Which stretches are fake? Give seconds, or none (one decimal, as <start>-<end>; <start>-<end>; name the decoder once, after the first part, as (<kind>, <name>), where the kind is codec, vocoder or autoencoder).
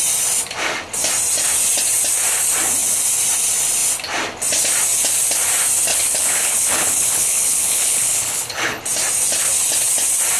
5.9-8.8 (codec, HILCodec)